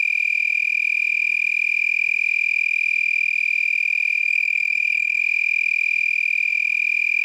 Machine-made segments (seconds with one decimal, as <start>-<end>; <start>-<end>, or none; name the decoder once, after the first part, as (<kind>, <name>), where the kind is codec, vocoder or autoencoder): 4.2-5.2 (codec, DAC)